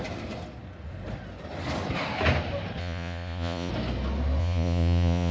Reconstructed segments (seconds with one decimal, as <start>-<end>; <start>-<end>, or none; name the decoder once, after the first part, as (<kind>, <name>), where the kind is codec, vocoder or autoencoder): 2.8-3.7 (vocoder, Vocos); 4.4-5.3

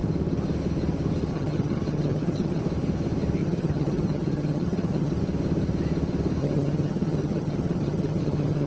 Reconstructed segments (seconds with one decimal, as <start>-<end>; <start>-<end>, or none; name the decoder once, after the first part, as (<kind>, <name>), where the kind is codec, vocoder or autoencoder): 1.3-2.6 (vocoder, HiFi-GAN); 3.4-5.1; 6.4-8.7

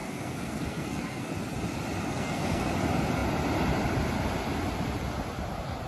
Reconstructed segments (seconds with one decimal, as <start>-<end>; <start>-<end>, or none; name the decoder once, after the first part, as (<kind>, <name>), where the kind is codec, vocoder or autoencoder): 0.0-1.3 (codec, SNAC); 2.1-2.7

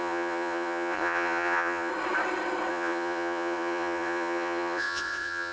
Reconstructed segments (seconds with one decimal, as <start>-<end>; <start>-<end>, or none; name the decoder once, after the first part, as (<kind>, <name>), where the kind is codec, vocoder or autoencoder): 0.0-1.9 (vocoder, Vocos); 2.7-5.5

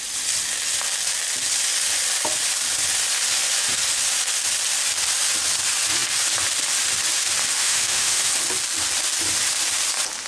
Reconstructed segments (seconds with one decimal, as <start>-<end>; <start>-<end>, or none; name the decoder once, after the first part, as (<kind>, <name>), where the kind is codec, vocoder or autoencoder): 7.6-8.3 (autoencoder, DAC-VAE)

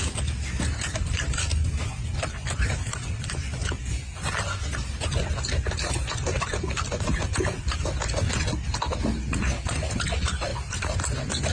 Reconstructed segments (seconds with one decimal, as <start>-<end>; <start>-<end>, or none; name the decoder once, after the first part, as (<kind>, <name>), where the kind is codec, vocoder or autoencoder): 3.6-4.3 (vocoder, Vocos); 7.1-7.6

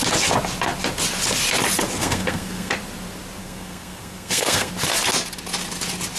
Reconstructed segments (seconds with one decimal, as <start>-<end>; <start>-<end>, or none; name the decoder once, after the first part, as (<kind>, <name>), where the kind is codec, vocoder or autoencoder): 2.0-2.7 (codec, SNAC); 3.4-4.7